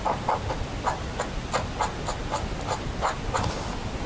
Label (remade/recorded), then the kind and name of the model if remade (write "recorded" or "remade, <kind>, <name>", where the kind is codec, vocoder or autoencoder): recorded